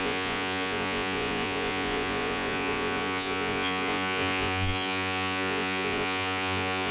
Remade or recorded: remade